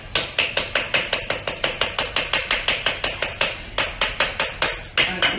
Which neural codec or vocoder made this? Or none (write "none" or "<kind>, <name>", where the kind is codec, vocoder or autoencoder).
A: none